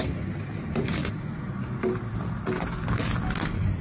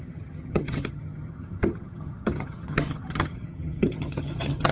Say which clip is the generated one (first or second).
second